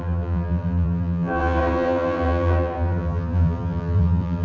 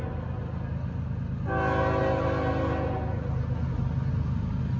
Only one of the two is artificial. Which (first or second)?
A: first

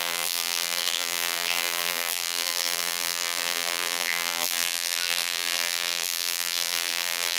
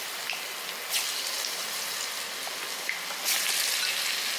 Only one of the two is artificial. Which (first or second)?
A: first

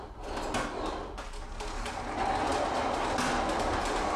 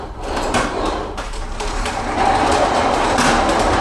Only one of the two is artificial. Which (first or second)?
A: second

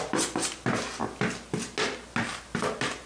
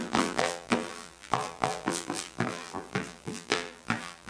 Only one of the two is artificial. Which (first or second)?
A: second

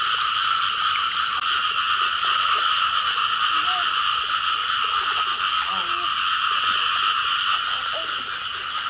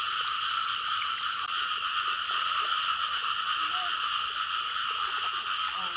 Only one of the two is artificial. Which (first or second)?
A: second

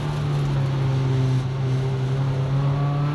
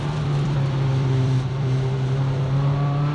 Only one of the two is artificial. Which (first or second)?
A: second